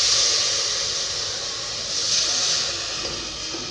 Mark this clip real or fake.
real